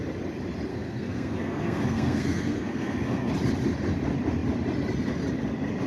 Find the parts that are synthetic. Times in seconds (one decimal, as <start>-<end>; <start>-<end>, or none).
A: 0.7-3.3